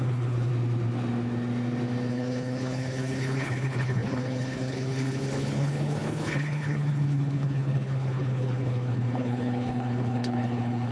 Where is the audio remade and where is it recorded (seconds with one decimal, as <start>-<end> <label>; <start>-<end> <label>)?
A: 0.0-0.5 remade; 0.5-2.1 recorded; 2.1-10.9 remade